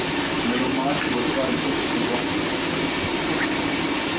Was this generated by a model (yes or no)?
no